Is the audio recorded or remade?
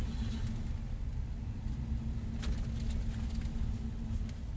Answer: recorded